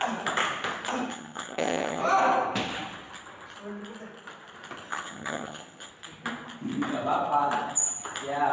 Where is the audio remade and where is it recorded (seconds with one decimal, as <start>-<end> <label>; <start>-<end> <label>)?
0.0-1.1 recorded; 1.1-2.0 remade; 2.0-4.9 recorded; 4.9-5.9 remade; 5.9-8.5 recorded